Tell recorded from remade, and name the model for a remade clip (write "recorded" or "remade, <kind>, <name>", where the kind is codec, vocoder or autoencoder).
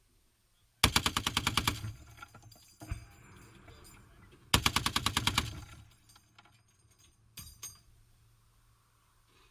recorded